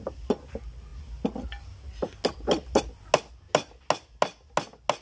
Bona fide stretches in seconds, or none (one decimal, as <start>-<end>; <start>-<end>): 0.0-5.0

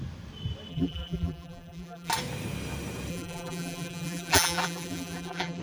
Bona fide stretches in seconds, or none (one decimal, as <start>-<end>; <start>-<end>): 0.0-0.7; 2.1-3.1

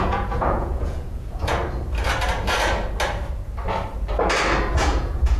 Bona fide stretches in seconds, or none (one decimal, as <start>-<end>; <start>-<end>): 1.6-4.8

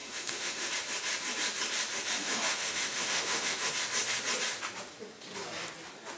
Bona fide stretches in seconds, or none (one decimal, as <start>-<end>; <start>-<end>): 0.7-2.2; 3.7-6.2

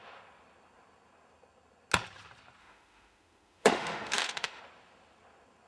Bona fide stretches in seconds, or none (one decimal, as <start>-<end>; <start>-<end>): 0.0-2.6; 4.6-5.7